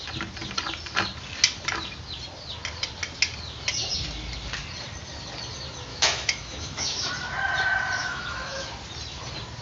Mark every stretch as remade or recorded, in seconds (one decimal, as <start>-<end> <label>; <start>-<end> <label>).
0.0-5.9 recorded; 5.9-7.1 remade; 7.1-8.0 recorded; 8.0-8.7 remade; 8.7-9.6 recorded